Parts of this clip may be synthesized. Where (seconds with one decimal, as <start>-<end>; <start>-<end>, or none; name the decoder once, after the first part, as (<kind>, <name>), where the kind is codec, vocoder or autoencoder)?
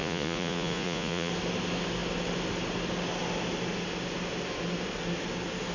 0.0-1.3 (vocoder, Vocos)